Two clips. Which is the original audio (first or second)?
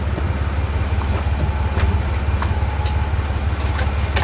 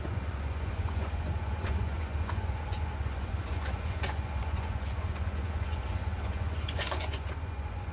first